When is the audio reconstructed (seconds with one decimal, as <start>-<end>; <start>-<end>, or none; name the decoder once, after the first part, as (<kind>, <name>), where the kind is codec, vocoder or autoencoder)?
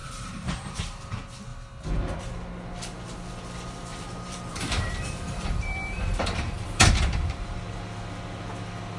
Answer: 0.0-0.8 (vocoder, BigVGAN v2); 3.9-7.6